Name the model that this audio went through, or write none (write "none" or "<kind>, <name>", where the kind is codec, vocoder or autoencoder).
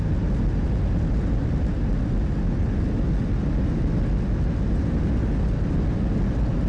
none